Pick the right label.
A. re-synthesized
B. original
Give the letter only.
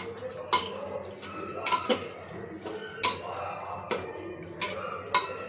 B